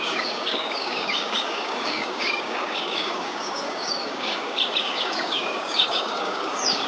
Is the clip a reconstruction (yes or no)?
yes